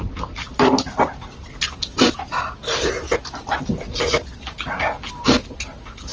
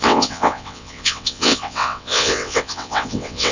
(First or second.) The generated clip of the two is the second